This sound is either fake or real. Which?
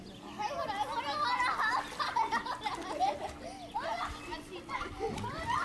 real